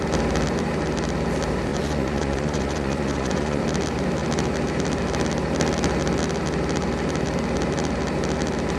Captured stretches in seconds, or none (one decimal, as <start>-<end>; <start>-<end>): 0.0-1.7; 3.6-8.8